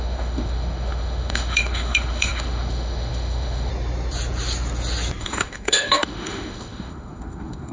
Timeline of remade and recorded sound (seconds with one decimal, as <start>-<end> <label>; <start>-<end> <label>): 0.0-3.7 remade; 3.7-5.2 recorded; 5.2-7.7 remade